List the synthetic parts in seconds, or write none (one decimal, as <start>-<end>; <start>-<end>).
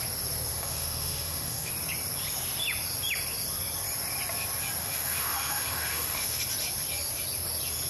0.5-1.7; 4.8-6.4